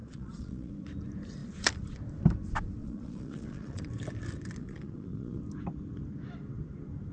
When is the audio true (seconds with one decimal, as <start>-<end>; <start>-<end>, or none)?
0.7-2.8; 3.9-4.6; 5.4-7.1